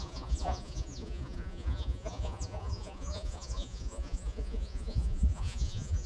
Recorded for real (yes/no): no